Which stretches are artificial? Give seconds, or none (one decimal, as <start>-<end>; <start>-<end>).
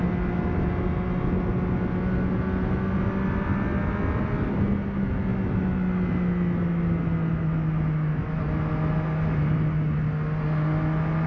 none